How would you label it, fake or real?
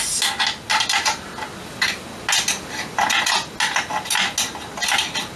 real